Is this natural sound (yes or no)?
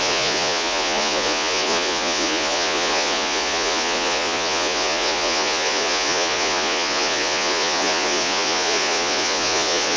no